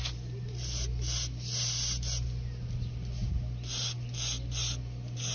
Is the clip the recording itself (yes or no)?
yes